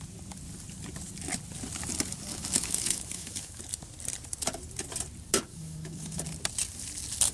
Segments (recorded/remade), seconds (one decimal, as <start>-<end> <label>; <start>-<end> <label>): 0.0-2.3 recorded; 2.3-3.6 remade; 3.6-5.5 recorded; 5.5-6.2 remade; 6.2-7.3 recorded